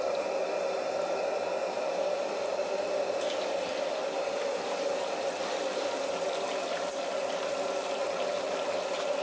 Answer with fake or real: real